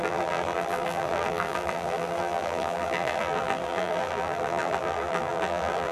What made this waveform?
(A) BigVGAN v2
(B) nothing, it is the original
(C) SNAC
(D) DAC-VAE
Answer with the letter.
A